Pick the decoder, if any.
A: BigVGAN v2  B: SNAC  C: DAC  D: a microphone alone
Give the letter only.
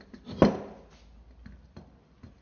D